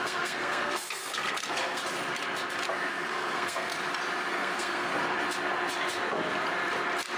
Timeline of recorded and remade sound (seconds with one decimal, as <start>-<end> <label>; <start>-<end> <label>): 0.0-1.8 remade; 1.8-2.9 recorded; 2.9-3.7 remade; 3.7-4.3 recorded; 4.3-4.9 remade; 4.9-7.2 recorded